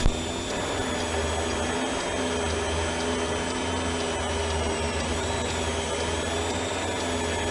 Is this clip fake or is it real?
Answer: real